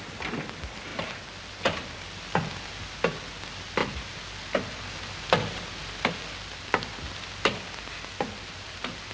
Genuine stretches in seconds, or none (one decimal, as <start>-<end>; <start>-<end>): 0.0-9.1